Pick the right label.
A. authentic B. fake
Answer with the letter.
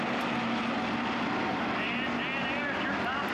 A